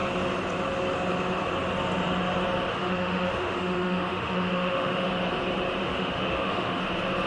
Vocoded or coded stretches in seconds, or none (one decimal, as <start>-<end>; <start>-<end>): 2.7-5.1; 5.8-6.8